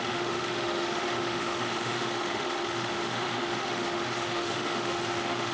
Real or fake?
fake